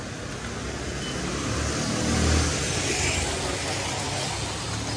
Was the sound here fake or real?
real